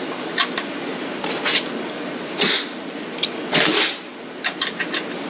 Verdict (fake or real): real